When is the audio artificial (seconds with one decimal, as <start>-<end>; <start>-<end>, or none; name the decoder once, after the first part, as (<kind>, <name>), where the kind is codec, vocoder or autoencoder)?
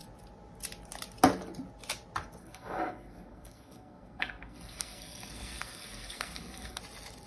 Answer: 2.4-6.8 (codec, SNAC)